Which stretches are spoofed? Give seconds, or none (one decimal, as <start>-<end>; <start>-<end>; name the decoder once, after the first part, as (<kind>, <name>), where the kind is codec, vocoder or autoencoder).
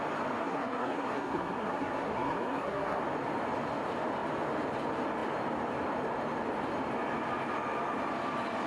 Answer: 0.4-3.0 (codec, SNAC)